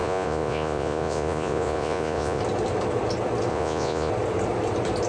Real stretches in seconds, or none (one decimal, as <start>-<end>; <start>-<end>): 2.4-3.5; 4.1-5.1